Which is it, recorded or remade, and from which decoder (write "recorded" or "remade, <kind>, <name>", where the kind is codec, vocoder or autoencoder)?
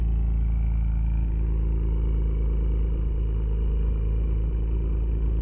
recorded